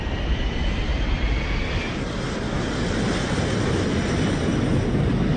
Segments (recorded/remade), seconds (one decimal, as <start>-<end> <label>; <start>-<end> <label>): 0.0-5.4 recorded